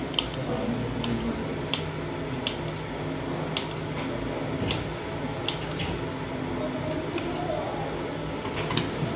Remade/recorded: recorded